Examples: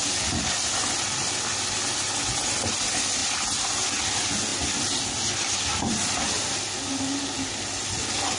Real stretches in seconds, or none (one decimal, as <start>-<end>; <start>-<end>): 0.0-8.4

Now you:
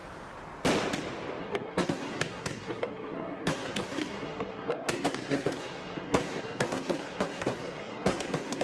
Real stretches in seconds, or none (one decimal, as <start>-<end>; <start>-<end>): 0.0-1.4

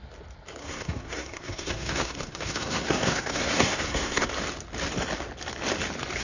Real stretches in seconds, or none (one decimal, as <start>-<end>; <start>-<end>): 0.0-0.6; 4.3-6.2

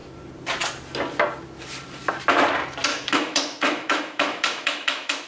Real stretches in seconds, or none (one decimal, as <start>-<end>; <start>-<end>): 0.0-2.9

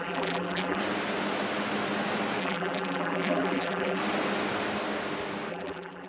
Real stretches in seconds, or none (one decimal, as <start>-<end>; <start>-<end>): 0.8-2.4; 4.0-5.5